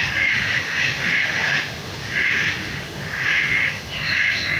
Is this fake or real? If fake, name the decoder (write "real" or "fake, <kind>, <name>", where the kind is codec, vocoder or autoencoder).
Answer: fake, autoencoder, DAC-VAE